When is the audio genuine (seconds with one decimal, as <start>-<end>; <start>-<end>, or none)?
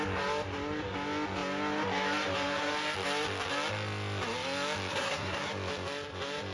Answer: 0.0-4.9; 5.5-6.5